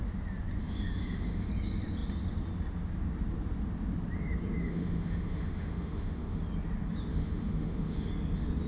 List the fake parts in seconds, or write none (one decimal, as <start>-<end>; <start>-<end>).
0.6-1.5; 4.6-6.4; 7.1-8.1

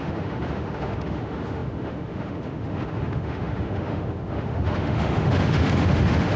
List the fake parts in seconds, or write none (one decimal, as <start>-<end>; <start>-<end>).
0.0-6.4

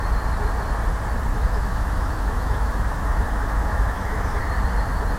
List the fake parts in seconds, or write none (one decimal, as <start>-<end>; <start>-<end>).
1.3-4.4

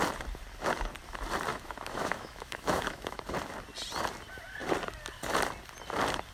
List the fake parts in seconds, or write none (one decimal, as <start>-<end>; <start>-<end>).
1.5-3.2